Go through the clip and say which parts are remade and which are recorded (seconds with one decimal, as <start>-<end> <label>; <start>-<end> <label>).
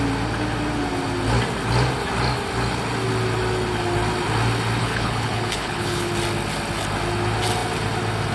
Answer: 0.0-4.8 recorded; 4.8-6.1 remade; 6.1-8.3 recorded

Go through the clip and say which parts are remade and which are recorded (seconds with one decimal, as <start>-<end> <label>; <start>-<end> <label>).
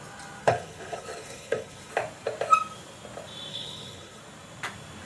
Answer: 0.0-0.4 recorded; 0.4-1.9 remade; 1.9-3.5 recorded; 3.5-4.2 remade; 4.2-5.1 recorded